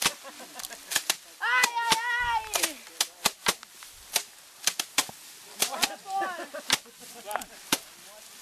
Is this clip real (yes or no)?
yes